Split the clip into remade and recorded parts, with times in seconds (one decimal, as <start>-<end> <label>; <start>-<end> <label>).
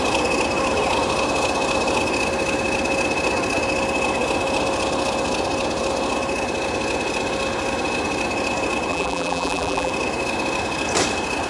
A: 0.0-8.9 recorded; 8.9-9.9 remade; 9.9-11.5 recorded